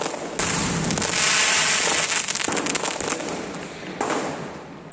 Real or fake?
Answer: real